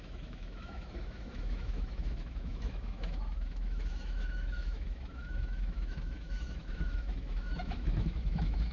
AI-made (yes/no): yes